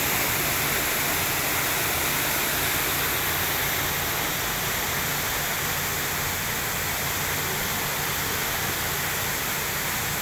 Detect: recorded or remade recorded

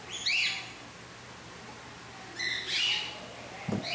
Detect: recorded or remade recorded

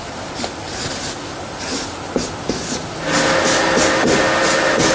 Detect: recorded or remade recorded